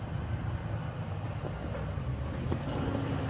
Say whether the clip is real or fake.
real